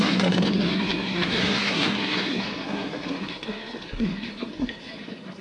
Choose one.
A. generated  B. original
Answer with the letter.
A